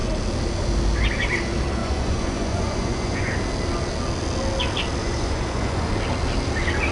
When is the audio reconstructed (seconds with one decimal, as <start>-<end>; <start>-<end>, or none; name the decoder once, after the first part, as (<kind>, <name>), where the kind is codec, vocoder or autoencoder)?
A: 1.8-3.3 (vocoder, Vocos); 5.0-5.9